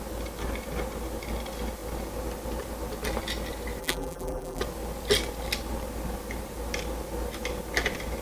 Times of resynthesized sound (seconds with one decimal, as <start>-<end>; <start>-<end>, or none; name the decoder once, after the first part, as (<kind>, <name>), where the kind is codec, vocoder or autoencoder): 3.8-4.6 (vocoder, BigVGAN v2)